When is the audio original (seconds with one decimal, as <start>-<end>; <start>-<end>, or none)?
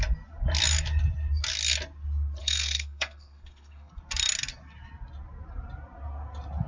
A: 0.0-2.4; 3.9-6.7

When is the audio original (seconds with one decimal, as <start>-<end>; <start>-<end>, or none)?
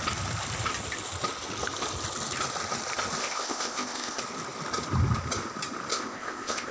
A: 0.0-3.2; 4.2-5.9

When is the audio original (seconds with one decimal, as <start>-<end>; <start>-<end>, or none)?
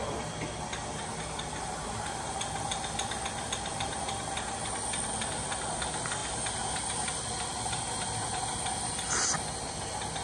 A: 0.0-10.2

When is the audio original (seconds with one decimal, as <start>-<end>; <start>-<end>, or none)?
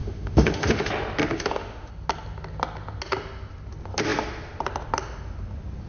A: 0.9-1.3; 1.9-5.9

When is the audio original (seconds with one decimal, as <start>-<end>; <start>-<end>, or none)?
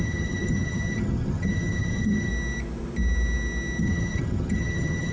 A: 2.3-3.8